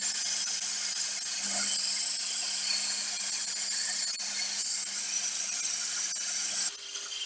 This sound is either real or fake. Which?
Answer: real